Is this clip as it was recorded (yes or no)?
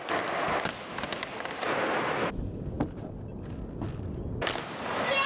yes